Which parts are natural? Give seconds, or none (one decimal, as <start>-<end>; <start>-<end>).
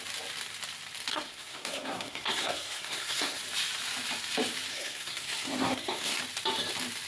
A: 0.0-1.1; 3.4-4.7; 6.2-7.1